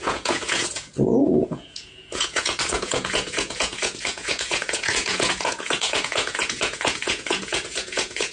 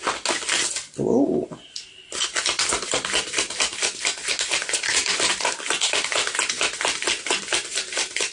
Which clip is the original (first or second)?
second